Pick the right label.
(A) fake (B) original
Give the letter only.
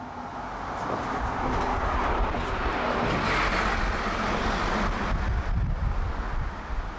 B